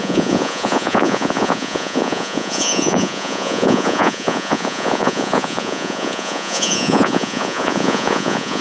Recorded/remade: remade